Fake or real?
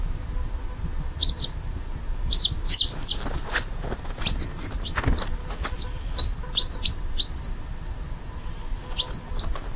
real